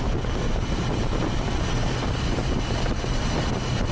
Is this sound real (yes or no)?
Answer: yes